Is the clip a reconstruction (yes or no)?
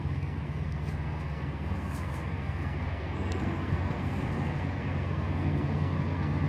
yes